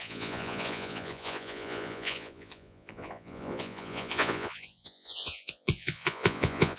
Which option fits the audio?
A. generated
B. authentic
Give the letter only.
A